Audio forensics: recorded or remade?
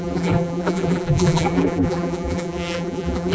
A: remade